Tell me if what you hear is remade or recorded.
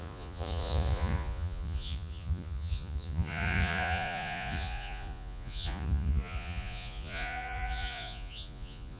remade